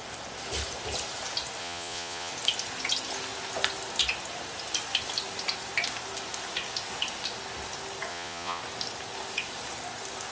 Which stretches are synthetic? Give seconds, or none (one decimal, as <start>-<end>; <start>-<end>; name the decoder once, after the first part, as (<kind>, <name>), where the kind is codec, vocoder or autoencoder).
1.6-2.3 (vocoder, Vocos); 8.1-8.6

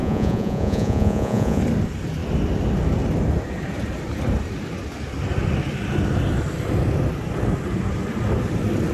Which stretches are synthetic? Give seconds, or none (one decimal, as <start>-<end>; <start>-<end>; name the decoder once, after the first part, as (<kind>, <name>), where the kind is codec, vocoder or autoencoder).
0.0-1.6 (vocoder, Vocos)

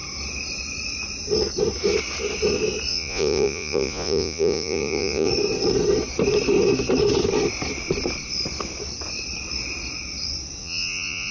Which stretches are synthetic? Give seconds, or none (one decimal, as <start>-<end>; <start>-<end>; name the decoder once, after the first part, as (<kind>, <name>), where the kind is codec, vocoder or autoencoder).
2.9-5.3 (vocoder, Vocos); 10.6-11.3

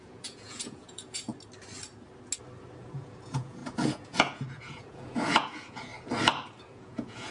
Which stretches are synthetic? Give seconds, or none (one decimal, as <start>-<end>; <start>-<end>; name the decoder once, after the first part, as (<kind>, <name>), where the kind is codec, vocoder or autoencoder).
0.0-1.3 (vocoder, Vocos); 2.8-5.9; 6.6-7.3

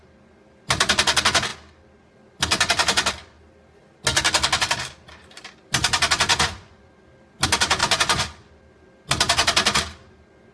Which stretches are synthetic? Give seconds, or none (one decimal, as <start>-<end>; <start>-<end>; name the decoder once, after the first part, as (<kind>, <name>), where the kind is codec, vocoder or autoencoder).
6.3-6.9 (vocoder, Vocos); 7.8-8.6

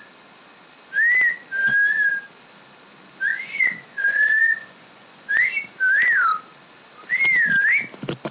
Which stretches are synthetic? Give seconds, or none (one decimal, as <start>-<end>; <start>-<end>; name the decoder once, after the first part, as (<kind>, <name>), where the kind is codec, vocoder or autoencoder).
3.3-5.5 (vocoder, Vocos)

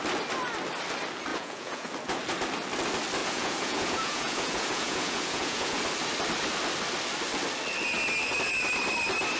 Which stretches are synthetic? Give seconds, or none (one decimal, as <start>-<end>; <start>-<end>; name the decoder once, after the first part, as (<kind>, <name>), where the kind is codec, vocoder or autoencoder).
1.3-1.9 (vocoder, Vocos); 3.2-5.8

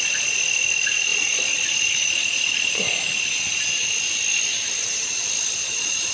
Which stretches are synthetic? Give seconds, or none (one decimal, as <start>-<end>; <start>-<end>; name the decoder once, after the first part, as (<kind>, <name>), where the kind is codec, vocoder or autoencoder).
none